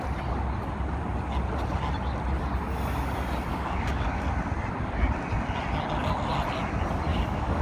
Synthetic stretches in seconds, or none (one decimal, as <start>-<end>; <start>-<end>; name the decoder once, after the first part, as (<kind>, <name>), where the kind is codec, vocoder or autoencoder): 3.5-4.2 (codec, DAC); 7.1-7.6